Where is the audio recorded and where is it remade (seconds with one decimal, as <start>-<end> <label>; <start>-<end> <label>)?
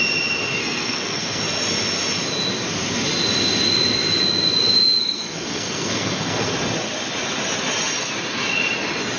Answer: 0.0-0.6 recorded; 0.6-1.4 remade; 1.4-5.0 recorded; 5.0-6.5 remade; 6.5-9.2 recorded